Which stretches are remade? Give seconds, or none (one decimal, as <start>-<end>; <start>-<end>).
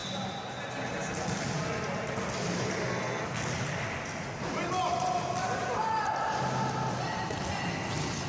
2.9-3.4